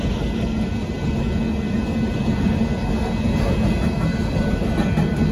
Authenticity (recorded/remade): recorded